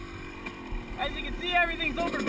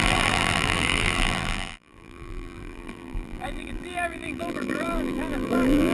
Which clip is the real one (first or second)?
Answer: first